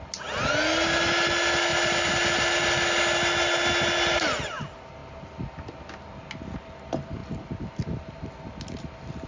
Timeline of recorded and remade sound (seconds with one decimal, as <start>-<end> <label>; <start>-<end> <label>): 0.0-9.3 recorded